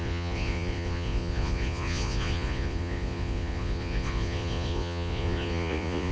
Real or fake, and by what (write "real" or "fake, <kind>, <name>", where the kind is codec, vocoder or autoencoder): fake, vocoder, Vocos